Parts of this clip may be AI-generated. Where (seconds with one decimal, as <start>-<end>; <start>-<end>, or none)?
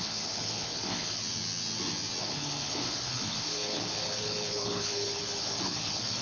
0.0-1.2; 2.2-6.2